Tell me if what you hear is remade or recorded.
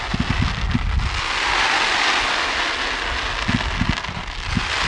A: recorded